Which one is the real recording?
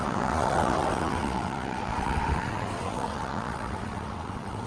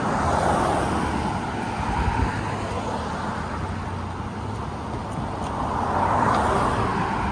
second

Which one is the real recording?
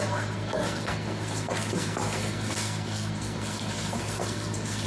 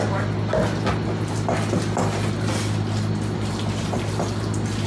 second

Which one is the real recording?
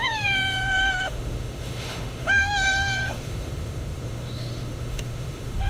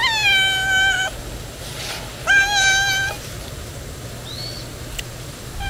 second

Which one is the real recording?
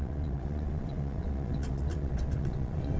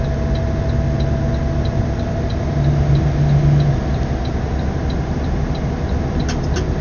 second